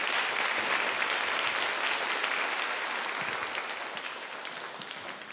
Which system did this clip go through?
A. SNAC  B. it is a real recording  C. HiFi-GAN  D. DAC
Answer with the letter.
B